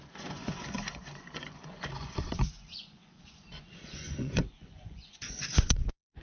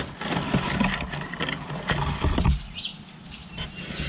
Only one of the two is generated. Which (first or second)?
first